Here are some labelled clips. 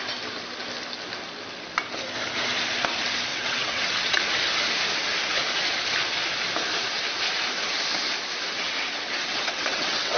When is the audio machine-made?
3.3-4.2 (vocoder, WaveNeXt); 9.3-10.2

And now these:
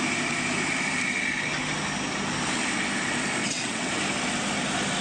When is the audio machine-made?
3.4-3.9 (vocoder, WaveNeXt)

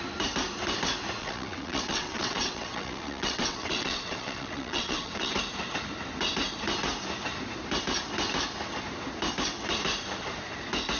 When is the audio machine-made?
1.2-5.4 (vocoder, WaveNeXt)

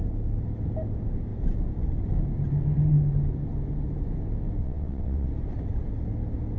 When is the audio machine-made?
4.6-5.3 (vocoder, WaveNeXt)

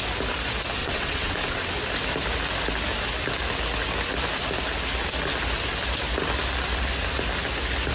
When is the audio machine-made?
0.8-1.7 (vocoder, WaveNeXt)

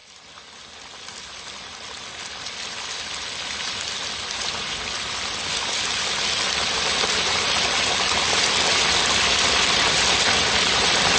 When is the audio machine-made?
none

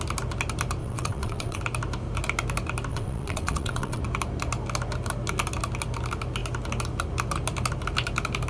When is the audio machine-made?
0.8-1.6 (vocoder, WaveNeXt); 2.9-4.0